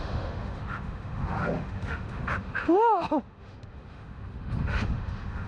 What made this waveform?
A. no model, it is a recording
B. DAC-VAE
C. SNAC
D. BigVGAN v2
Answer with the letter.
B